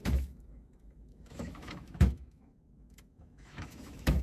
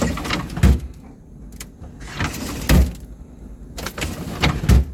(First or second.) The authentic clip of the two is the second